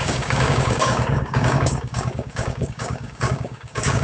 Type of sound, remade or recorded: remade